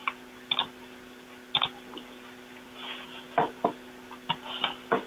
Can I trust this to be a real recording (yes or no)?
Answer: yes